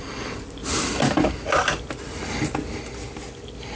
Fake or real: real